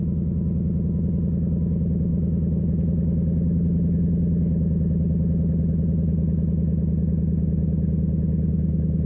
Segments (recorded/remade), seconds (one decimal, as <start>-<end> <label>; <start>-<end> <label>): 0.0-2.1 recorded; 2.1-2.6 remade; 2.6-9.1 recorded